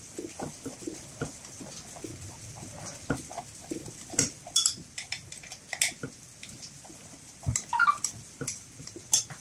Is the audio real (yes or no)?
yes